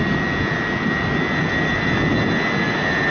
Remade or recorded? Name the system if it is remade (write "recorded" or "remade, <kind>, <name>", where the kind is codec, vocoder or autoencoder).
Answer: recorded